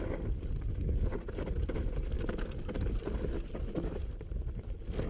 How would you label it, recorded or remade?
recorded